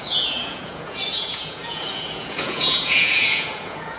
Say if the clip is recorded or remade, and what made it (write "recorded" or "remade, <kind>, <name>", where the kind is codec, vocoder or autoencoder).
remade, vocoder, Vocos